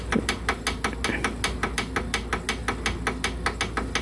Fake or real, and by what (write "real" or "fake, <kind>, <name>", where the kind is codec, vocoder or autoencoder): real